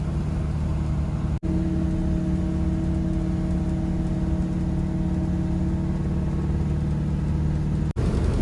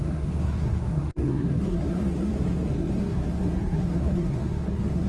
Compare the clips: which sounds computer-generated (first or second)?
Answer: second